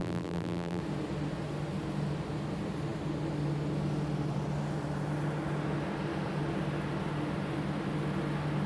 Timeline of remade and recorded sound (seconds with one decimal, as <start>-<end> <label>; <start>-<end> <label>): 0.0-0.8 remade; 0.8-8.7 recorded